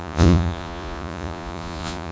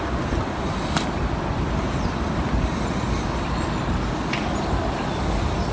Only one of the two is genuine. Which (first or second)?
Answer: second